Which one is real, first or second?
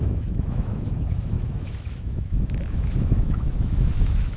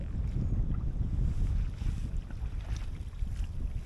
second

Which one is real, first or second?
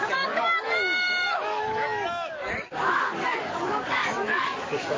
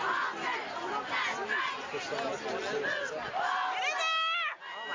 second